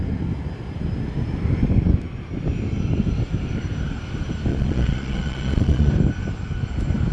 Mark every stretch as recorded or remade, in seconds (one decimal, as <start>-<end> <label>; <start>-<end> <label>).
0.0-4.5 recorded; 4.5-5.9 remade; 5.9-7.1 recorded